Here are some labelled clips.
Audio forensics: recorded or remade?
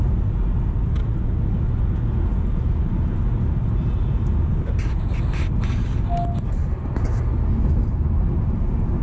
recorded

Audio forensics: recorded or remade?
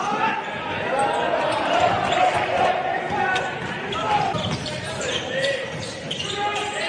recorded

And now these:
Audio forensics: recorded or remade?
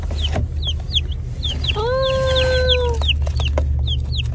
recorded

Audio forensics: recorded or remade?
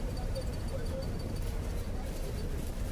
remade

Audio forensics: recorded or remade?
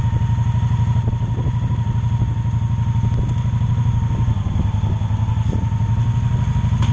recorded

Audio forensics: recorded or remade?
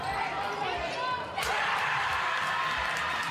remade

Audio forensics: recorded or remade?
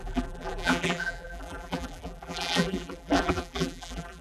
remade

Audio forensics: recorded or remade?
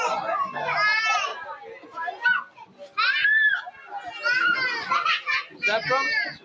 recorded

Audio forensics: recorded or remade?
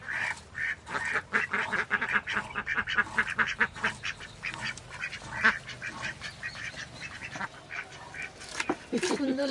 remade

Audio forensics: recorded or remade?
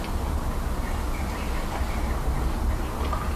recorded